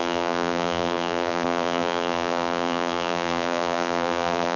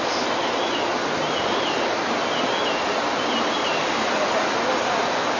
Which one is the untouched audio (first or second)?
second